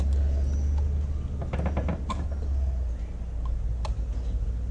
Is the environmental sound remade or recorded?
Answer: recorded